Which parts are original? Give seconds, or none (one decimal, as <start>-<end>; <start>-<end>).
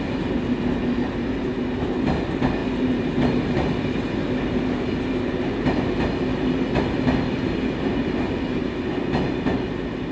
0.0-10.1